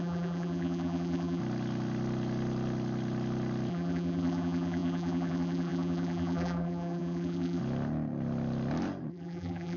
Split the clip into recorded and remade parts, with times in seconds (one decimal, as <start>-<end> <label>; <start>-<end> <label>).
0.0-1.4 remade; 1.4-3.7 recorded; 3.7-7.6 remade; 7.6-9.1 recorded; 9.1-9.8 remade